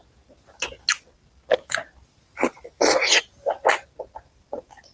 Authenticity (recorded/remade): recorded